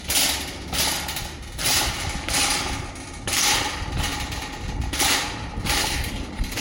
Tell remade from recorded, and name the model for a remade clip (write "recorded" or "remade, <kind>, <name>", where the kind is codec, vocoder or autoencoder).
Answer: recorded